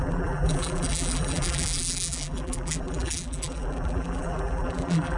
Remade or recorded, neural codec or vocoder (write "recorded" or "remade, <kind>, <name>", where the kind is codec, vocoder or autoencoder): remade, vocoder, BigVGAN v2